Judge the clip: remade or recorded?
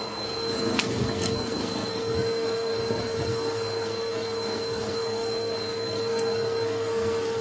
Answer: remade